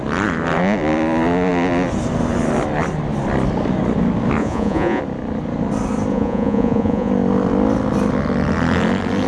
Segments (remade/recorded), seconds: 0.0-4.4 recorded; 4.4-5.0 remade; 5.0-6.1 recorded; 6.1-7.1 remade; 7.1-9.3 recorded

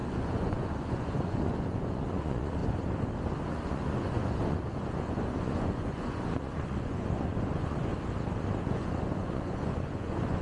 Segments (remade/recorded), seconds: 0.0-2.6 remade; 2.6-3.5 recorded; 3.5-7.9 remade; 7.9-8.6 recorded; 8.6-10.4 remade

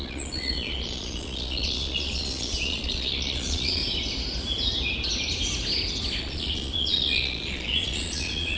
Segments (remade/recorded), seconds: 0.0-3.8 remade; 3.8-6.2 recorded; 6.2-8.6 remade

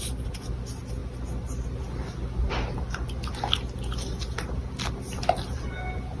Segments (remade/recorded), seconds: 0.0-6.2 recorded

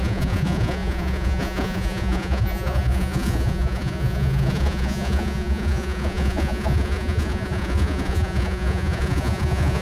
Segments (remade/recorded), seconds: 0.0-9.8 remade